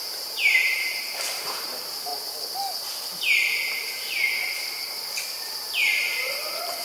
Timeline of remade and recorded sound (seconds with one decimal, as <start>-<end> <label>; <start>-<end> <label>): 0.0-2.1 remade; 2.1-5.4 recorded; 5.4-6.8 remade